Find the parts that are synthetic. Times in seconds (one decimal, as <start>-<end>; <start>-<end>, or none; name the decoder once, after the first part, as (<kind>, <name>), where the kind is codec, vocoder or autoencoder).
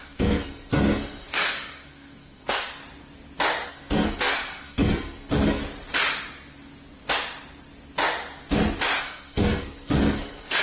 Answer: 0.0-2.8 (codec, SNAC); 3.7-5.6; 9.0-10.6